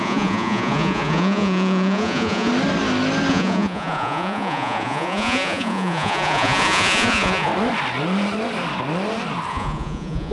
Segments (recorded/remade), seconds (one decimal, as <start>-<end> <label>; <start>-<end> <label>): 0.0-2.5 remade; 2.5-3.3 recorded; 3.3-7.5 remade; 7.5-9.5 recorded; 9.5-10.3 remade